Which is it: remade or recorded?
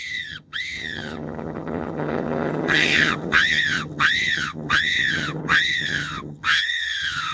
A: remade